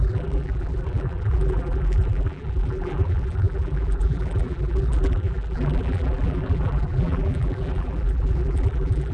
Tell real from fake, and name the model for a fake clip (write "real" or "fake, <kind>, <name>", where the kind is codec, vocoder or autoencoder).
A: fake, vocoder, BigVGAN v2